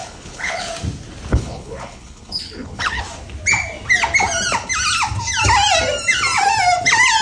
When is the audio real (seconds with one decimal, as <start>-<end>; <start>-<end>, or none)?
0.7-1.3; 3.0-7.2